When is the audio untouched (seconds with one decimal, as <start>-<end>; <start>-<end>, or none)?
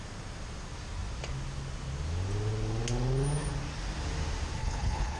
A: 0.0-4.6